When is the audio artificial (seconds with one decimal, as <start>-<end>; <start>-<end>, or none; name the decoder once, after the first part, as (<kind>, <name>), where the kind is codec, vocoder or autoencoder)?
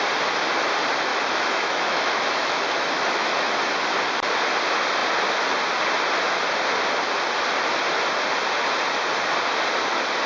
1.1-3.5 (autoencoder, DAC-VAE)